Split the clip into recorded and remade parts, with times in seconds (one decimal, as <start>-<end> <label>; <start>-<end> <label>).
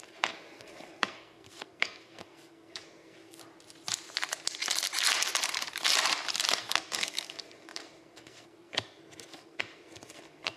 0.0-3.4 remade; 3.4-6.6 recorded; 6.6-10.6 remade